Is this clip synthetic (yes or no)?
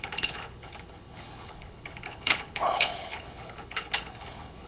yes